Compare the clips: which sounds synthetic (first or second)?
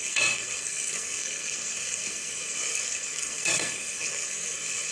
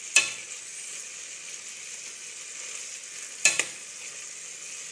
first